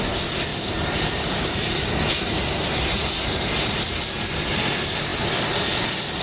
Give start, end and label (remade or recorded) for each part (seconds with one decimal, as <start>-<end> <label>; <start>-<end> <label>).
0.0-0.5 recorded; 0.5-4.2 remade; 4.2-6.2 recorded